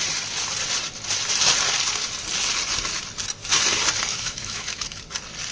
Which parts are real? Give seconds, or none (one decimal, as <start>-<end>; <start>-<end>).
0.0-4.1; 5.0-5.5